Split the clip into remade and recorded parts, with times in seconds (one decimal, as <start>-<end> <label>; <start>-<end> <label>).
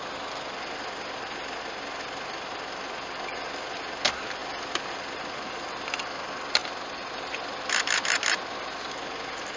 0.0-9.6 recorded